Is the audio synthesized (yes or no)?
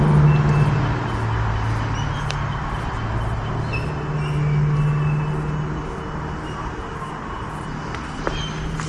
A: no